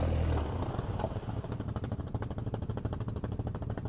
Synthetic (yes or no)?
no